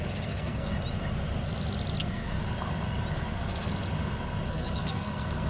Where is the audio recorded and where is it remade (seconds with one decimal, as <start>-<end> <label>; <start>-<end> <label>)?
0.0-0.7 remade; 0.7-2.0 recorded; 2.0-2.4 remade; 2.4-3.1 recorded; 3.1-3.7 remade; 3.7-4.5 recorded; 4.5-5.5 remade